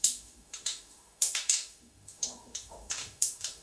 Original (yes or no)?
no